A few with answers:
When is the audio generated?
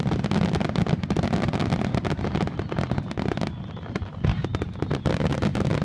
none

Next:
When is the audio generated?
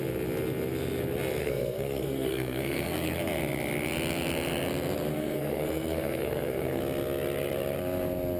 1.4-3.2 (codec, SNAC); 5.1-6.8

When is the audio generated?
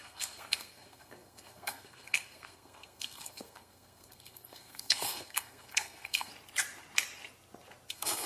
0.0-6.3 (codec, SNAC); 7.9-8.3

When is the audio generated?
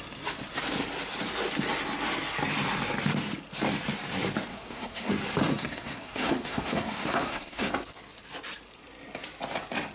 4.5-5.1 (codec, SNAC); 5.5-7.7